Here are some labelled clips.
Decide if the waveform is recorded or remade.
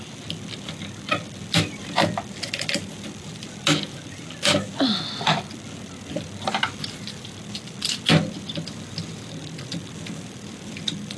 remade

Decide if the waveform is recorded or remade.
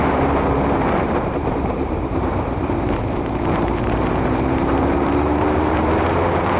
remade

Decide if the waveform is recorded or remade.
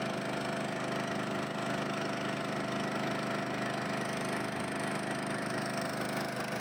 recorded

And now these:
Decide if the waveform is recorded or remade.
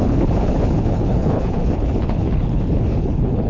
remade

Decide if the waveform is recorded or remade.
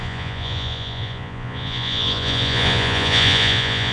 remade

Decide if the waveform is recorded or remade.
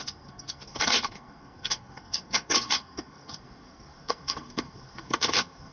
remade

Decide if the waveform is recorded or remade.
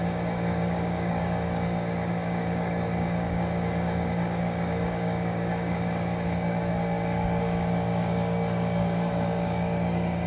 remade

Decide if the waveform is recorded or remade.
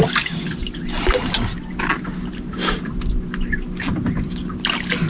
recorded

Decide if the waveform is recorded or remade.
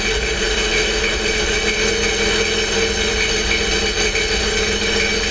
recorded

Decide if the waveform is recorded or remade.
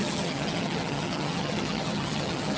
remade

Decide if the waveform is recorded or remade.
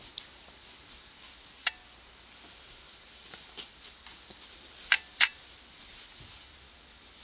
recorded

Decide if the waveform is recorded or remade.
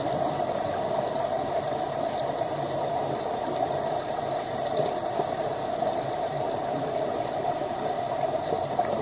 remade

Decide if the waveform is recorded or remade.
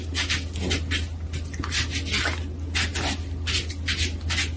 recorded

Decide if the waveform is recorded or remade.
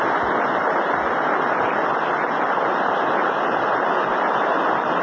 recorded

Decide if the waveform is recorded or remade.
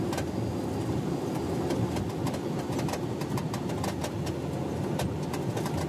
recorded